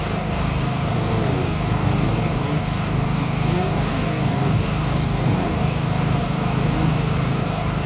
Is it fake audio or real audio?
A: fake